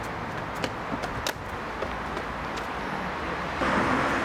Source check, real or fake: real